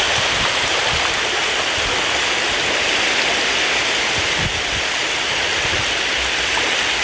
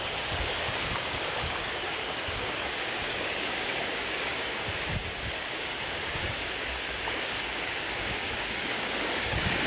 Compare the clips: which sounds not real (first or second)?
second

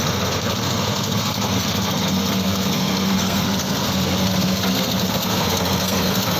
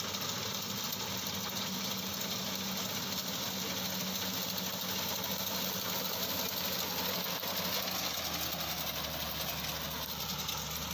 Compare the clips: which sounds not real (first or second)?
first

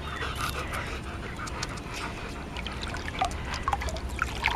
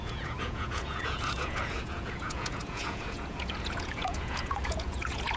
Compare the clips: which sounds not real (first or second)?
second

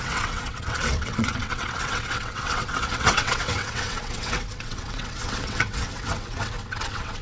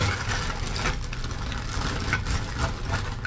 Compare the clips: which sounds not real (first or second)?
first